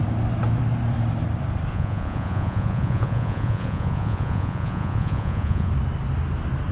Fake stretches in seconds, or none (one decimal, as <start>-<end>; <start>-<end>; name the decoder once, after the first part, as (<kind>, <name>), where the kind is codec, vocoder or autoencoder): 1.7-5.7 (vocoder, Vocos)